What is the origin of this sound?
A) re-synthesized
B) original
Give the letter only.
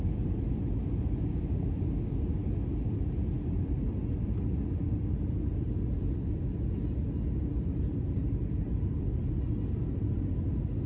B